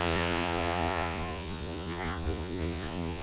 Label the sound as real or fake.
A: fake